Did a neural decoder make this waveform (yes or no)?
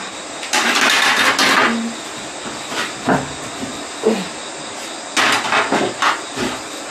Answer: no